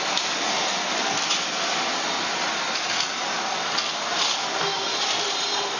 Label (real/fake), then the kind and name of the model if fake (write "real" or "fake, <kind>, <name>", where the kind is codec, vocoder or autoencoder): real